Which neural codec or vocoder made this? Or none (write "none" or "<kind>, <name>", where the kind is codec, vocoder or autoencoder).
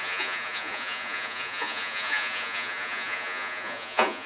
vocoder, Vocos